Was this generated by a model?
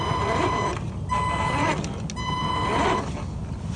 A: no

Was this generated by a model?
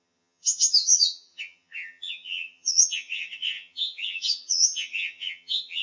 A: yes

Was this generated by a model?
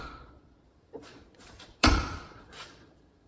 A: yes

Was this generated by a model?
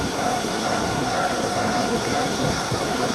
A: yes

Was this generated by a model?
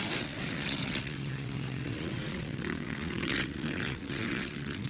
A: yes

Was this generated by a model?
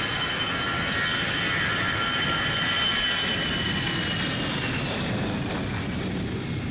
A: no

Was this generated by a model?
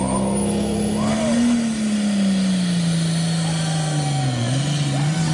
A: no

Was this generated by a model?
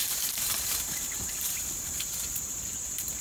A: yes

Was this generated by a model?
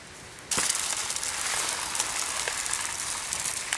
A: no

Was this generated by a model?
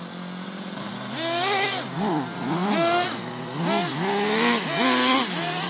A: no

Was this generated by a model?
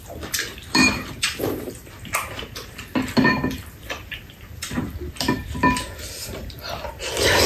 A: yes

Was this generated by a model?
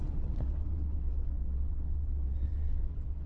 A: yes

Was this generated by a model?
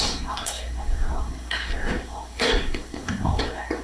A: yes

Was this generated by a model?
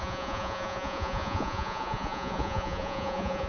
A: yes